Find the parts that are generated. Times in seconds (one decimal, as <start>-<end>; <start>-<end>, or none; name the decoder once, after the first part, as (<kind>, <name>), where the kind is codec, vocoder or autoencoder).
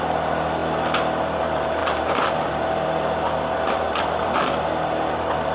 1.8-5.1 (vocoder, BigVGAN v2)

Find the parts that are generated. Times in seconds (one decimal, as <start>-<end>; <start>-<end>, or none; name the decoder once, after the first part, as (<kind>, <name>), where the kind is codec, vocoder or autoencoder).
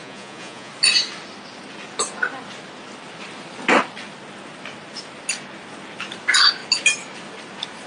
0.0-0.7 (vocoder, Vocos)